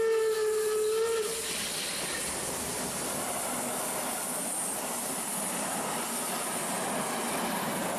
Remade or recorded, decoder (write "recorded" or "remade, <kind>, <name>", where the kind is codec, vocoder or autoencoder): recorded